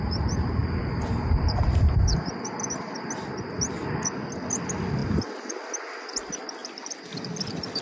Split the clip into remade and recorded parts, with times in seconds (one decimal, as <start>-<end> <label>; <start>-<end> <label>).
0.0-0.6 recorded; 0.6-2.5 remade; 2.5-7.8 recorded